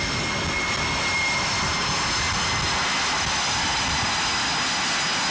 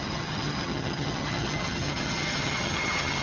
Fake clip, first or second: second